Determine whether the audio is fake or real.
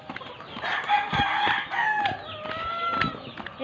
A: real